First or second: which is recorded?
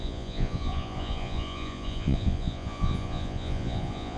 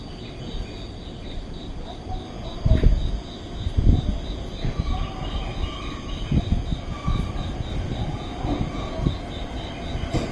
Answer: second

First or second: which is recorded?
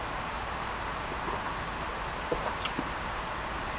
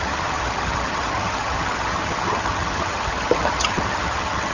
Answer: first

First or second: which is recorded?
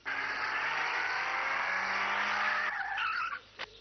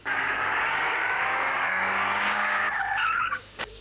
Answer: first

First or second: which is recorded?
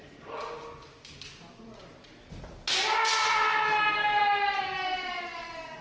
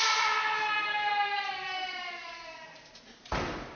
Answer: first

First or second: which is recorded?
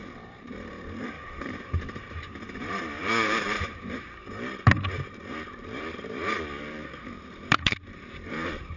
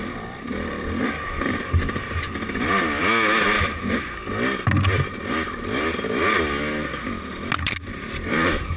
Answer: second